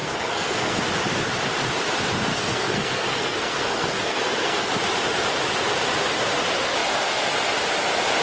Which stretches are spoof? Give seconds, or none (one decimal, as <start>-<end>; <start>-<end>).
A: 0.0-0.8; 2.3-4.7